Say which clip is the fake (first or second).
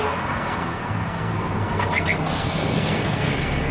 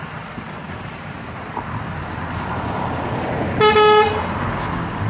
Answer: first